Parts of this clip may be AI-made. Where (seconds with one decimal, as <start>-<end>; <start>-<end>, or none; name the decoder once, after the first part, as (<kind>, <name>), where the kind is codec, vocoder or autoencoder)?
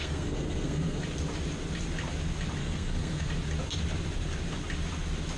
0.0-1.0 (codec, SNAC); 2.6-3.3